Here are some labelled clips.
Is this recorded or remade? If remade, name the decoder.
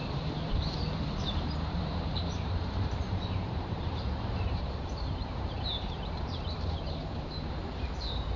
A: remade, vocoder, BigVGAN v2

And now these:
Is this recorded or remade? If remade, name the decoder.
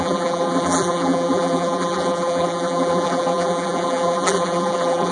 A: remade, vocoder, BigVGAN v2